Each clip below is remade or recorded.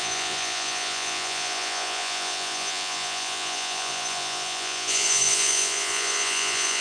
remade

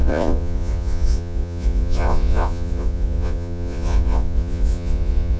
remade